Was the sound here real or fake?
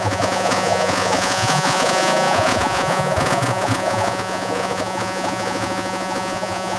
fake